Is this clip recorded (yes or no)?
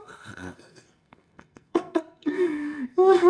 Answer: no